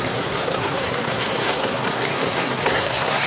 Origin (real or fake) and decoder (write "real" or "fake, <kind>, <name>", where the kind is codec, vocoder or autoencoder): fake, codec, SNAC